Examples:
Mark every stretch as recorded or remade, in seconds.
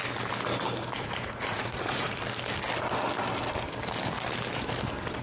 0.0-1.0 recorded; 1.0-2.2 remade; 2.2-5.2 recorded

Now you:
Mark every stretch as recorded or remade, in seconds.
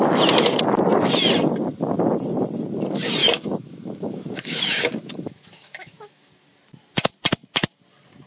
0.0-3.2 recorded; 3.2-6.3 remade; 6.3-8.3 recorded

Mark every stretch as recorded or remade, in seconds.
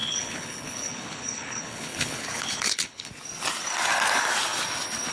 0.0-3.1 remade; 3.1-5.1 recorded